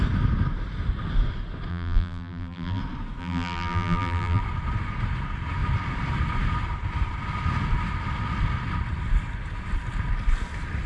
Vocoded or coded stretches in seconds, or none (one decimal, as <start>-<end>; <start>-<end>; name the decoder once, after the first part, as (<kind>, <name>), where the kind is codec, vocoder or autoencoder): 1.7-2.8 (vocoder, BigVGAN v2); 3.2-4.4